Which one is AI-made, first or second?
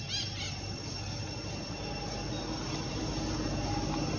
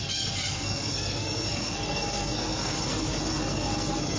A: second